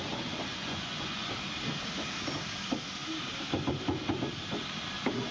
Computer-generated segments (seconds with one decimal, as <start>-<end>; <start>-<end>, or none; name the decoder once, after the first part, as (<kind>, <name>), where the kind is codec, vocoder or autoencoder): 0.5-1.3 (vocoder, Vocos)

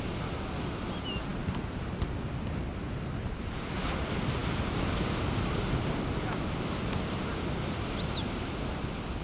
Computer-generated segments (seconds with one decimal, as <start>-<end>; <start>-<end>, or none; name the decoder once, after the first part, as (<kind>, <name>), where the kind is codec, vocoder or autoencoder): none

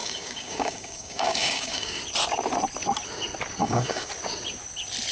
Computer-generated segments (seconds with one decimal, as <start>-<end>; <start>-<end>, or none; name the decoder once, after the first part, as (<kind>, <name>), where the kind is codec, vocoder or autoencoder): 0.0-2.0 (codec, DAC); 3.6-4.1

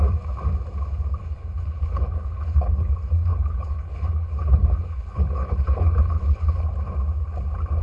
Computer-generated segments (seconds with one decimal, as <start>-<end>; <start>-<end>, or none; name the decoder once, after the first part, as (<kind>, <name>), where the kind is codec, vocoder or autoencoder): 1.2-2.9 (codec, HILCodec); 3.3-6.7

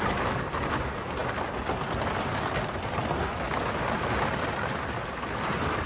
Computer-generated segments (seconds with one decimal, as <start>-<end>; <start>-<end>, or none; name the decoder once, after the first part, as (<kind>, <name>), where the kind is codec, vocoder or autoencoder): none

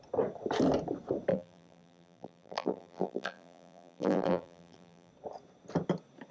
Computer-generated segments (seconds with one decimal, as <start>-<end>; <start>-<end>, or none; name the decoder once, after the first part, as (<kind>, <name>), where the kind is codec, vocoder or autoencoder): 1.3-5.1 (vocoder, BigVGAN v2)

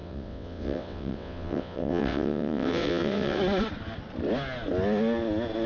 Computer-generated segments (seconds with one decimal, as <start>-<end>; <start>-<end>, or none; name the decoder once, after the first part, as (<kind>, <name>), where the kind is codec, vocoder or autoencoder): 0.0-3.4 (vocoder, WaveNeXt)

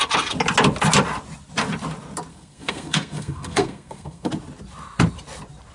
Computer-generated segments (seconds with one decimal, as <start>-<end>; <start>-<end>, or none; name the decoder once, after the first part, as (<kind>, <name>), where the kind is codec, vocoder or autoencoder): 2.3-4.3 (codec, SNAC)